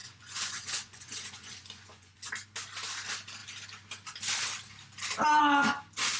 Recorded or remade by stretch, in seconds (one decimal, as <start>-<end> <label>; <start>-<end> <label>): 0.0-2.3 remade; 2.3-6.2 recorded